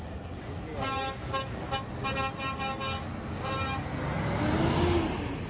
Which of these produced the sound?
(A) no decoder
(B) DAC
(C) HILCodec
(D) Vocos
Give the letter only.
A